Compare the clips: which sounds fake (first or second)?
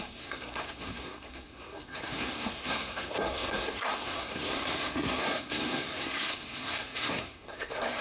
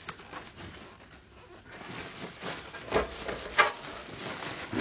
first